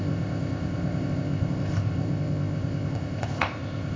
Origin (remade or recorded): remade